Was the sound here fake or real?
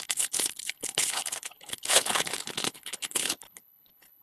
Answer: fake